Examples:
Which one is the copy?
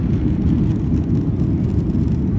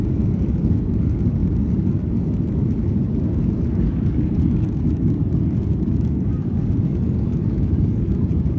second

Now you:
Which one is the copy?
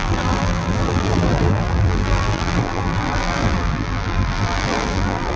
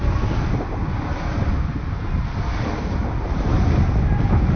first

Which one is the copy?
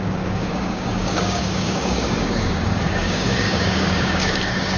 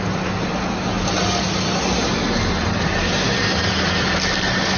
first